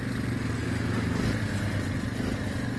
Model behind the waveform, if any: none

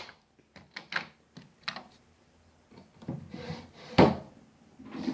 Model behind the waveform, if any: none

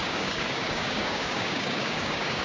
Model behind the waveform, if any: codec, DAC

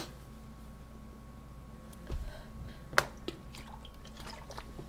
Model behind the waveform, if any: none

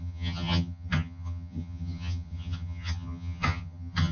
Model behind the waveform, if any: vocoder, HiFi-GAN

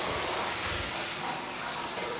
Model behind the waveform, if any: none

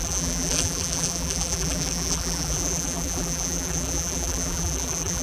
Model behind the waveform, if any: vocoder, BigVGAN v2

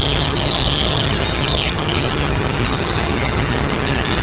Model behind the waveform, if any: vocoder, HiFi-GAN